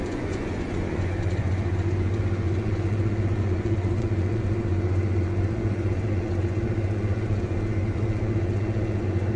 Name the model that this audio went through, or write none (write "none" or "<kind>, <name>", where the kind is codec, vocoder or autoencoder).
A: vocoder, Vocos